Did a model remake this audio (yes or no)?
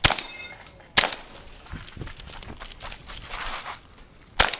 no